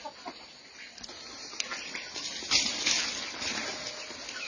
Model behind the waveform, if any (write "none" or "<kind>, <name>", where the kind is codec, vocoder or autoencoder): none